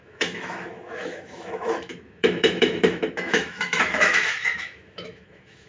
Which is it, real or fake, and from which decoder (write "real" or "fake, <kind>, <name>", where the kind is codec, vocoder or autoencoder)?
fake, autoencoder, DAC-VAE